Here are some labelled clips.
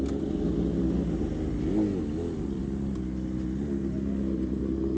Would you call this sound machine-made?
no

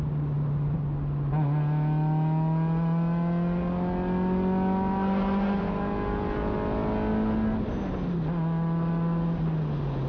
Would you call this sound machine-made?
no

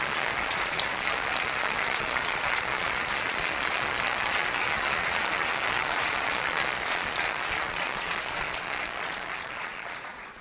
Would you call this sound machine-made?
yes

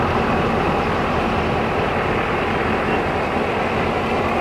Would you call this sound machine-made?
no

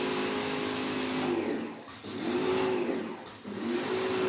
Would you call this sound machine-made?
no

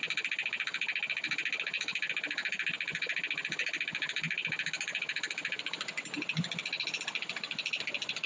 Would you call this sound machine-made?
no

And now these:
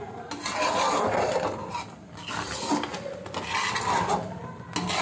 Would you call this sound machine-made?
no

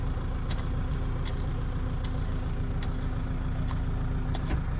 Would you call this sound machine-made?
no